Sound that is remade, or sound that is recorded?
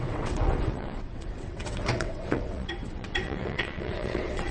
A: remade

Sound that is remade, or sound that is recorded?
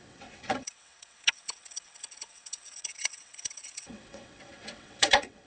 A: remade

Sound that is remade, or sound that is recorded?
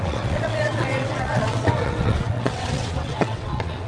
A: remade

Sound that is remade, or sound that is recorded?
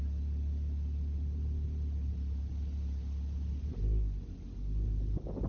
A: recorded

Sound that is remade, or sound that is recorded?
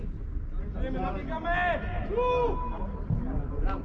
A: recorded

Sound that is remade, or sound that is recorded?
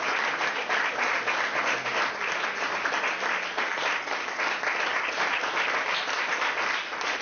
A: recorded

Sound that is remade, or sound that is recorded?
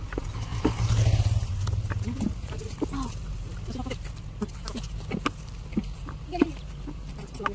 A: recorded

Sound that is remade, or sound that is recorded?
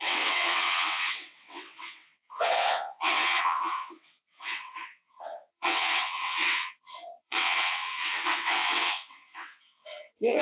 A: remade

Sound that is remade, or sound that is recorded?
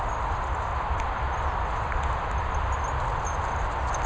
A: recorded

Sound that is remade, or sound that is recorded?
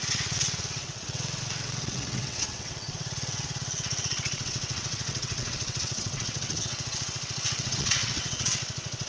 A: remade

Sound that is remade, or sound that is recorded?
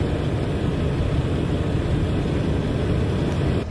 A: recorded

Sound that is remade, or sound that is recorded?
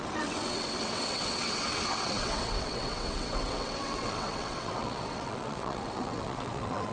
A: remade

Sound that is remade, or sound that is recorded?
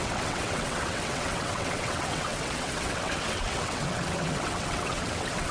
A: remade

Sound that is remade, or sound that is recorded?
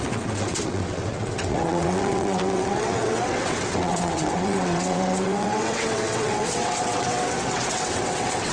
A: remade